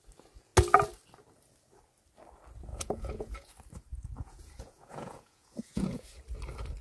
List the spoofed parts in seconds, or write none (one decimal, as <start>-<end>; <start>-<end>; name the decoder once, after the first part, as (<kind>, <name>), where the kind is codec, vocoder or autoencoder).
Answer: 2.7-3.5 (vocoder, Vocos); 3.9-6.1

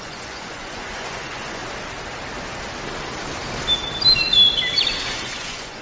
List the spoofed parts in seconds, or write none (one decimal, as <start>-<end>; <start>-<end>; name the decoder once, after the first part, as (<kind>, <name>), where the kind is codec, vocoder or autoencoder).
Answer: 0.0-1.6 (vocoder, Vocos); 5.1-5.8

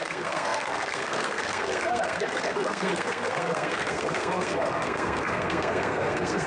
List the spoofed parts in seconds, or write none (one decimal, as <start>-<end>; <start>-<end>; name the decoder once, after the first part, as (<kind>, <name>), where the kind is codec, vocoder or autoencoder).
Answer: 0.0-6.5 (codec, SNAC)

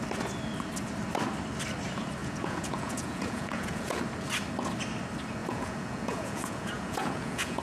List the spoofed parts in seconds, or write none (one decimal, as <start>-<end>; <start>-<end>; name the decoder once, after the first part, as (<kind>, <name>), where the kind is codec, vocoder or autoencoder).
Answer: 2.2-4.0 (vocoder, Vocos); 5.4-7.6

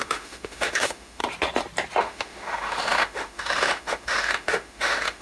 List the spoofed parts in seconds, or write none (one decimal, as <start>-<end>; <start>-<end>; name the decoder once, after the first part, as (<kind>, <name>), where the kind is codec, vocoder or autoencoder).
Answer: 0.0-1.2 (autoencoder, DAC-VAE); 2.0-5.2

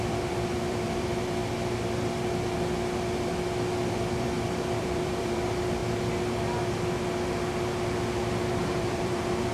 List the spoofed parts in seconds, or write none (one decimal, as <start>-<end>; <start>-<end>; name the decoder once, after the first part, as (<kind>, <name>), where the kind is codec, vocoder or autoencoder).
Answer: 0.0-1.4 (vocoder, BigVGAN v2); 3.9-5.8; 8.8-9.5

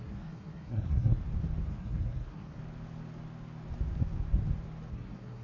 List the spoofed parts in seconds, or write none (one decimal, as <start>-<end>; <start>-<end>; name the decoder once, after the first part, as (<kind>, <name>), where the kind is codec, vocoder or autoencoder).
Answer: 0.0-1.2 (codec, SNAC); 1.7-2.6; 4.9-5.4

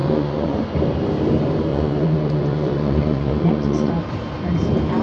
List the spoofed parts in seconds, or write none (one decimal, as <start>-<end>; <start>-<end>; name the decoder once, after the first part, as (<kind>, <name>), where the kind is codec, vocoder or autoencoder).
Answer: 0.0-0.6 (vocoder, Vocos); 1.7-3.9